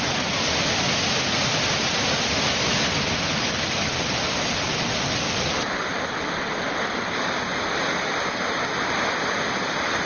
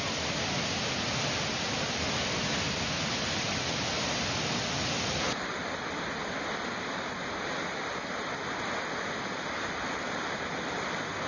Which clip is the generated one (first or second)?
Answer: first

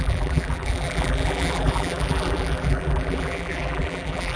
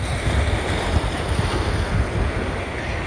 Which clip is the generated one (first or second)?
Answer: first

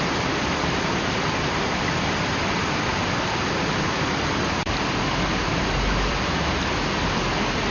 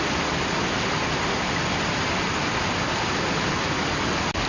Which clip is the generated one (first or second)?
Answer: first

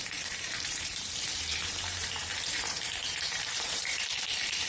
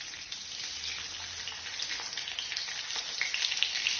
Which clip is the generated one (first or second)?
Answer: first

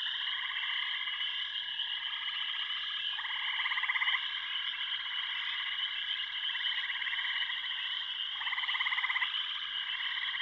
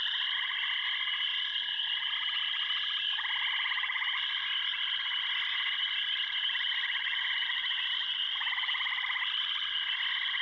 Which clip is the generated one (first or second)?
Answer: second